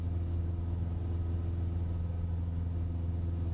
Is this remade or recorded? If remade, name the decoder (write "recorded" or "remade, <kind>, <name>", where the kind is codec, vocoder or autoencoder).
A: recorded